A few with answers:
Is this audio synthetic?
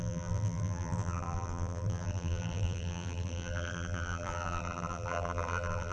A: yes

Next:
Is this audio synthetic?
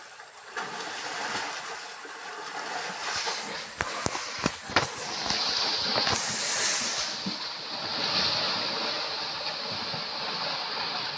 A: no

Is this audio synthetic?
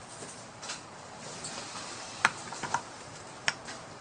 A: yes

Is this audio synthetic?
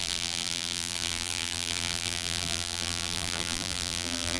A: yes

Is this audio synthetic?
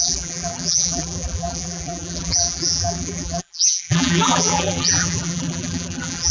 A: yes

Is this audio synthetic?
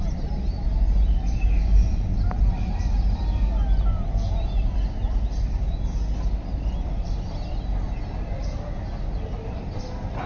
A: no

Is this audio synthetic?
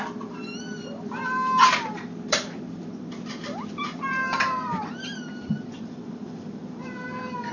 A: yes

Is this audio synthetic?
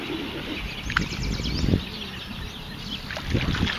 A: no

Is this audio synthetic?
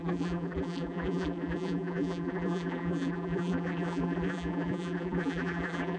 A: yes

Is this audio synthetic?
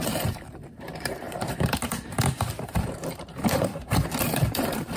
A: yes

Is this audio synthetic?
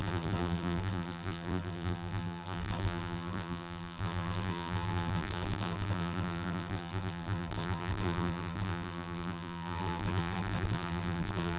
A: yes